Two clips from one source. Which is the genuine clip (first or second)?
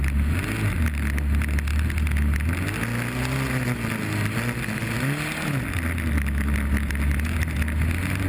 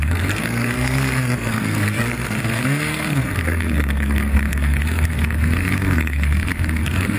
first